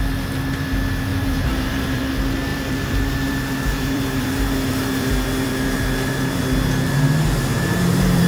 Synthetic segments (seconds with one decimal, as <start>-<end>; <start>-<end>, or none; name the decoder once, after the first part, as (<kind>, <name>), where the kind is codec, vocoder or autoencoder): 1.1-2.0 (vocoder, BigVGAN v2); 2.5-6.4; 7.5-8.3